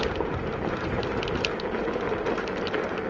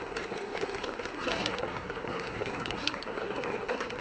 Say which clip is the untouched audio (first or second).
first